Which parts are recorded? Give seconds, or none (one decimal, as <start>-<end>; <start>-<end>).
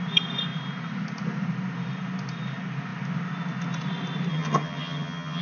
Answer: 0.0-4.3